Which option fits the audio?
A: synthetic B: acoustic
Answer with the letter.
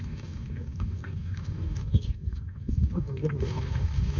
A